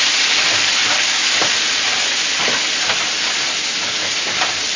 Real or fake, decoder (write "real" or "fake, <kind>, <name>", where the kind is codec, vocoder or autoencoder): real